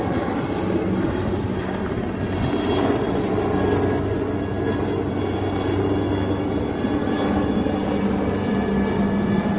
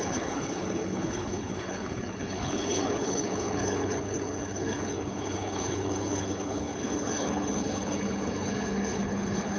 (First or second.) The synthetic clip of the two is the second